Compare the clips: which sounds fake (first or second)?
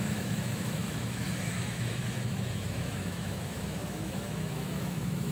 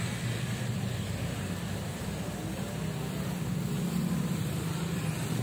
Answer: first